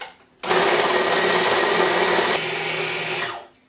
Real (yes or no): yes